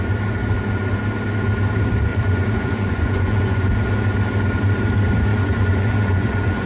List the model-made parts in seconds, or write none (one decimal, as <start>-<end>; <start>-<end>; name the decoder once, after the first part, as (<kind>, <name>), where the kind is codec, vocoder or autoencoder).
2.1-3.7 (vocoder, Vocos); 5.3-6.7